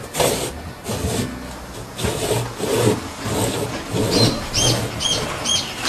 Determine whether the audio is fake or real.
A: real